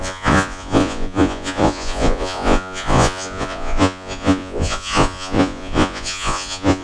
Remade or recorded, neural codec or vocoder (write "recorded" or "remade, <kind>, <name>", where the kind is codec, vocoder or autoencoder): remade, vocoder, Vocos